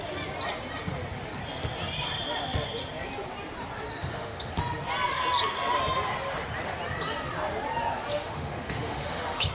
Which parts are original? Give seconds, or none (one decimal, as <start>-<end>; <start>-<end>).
0.0-3.9; 4.5-8.1